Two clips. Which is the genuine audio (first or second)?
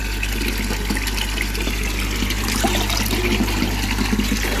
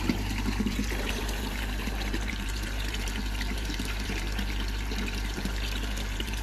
first